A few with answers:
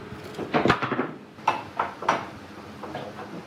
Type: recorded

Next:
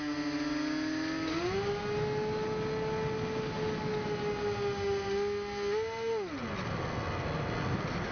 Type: recorded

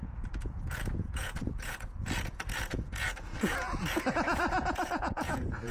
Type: remade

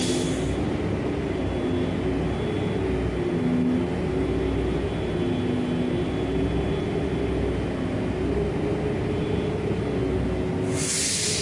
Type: recorded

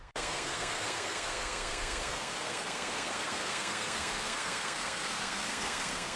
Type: remade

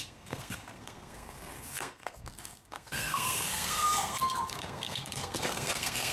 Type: remade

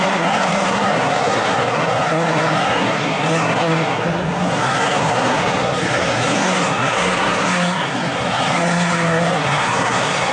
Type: remade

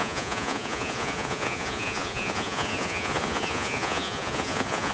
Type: remade